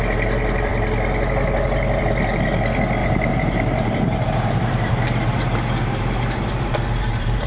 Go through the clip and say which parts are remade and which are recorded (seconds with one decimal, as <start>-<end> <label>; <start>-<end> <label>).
0.0-3.0 recorded; 3.0-7.5 remade